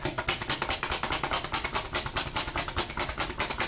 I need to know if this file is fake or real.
real